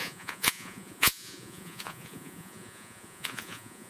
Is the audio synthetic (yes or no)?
yes